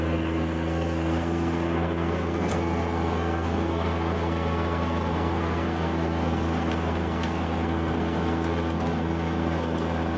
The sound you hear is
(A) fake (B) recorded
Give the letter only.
A